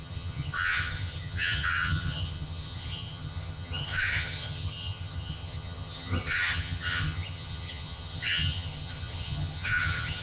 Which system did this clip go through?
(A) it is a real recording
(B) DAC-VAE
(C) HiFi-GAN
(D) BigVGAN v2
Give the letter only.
C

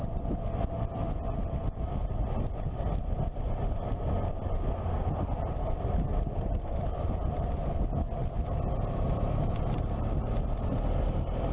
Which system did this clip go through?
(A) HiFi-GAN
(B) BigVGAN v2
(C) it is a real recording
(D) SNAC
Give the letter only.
C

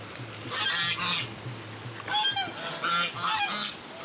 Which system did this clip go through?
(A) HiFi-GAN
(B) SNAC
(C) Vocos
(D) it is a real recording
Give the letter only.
D